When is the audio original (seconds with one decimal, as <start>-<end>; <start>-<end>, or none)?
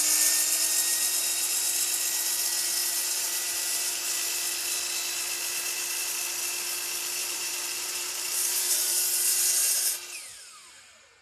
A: 0.0-0.9; 1.6-2.8; 4.1-7.2; 9.2-11.2